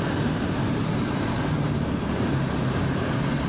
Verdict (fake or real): fake